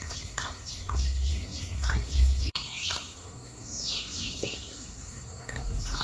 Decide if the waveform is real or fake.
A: fake